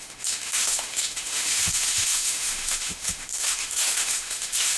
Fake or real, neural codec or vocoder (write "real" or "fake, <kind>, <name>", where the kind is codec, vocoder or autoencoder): fake, autoencoder, DAC-VAE